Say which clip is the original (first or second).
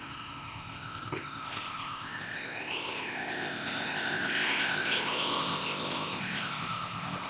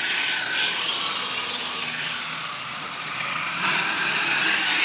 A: second